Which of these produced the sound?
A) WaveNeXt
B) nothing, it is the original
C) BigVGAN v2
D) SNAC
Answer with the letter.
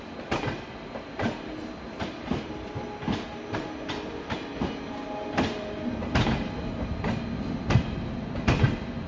B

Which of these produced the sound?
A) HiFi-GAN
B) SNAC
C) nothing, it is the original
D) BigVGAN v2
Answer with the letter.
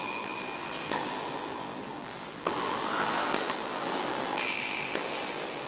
D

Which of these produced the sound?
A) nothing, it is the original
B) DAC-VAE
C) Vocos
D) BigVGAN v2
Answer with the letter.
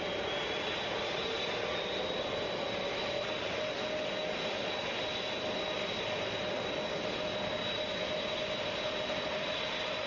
A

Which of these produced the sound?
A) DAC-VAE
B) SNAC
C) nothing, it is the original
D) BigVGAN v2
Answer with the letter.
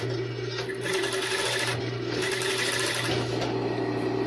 C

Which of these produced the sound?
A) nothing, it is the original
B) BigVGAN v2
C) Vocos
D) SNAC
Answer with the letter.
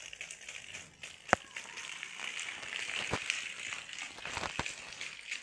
A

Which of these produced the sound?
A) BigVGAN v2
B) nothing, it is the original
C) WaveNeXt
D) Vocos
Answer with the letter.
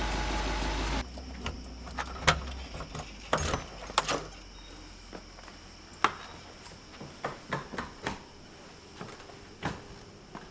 B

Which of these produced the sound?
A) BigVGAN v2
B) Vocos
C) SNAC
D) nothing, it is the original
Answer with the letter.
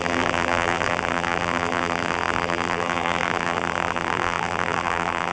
A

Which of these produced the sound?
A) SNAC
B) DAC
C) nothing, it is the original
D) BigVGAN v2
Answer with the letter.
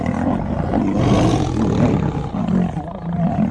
C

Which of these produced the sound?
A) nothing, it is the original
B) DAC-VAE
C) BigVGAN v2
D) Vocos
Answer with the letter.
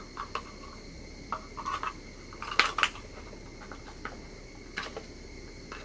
A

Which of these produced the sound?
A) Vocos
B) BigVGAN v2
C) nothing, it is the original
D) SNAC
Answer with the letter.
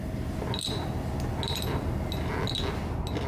C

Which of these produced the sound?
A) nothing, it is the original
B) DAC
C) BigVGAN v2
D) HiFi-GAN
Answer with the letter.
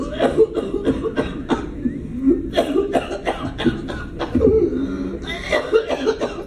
A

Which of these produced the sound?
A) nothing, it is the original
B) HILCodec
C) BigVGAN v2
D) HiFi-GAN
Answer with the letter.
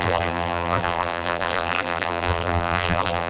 C